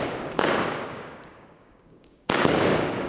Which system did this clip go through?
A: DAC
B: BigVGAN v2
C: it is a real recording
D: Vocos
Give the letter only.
A